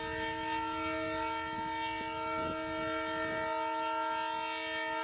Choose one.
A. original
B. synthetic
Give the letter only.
A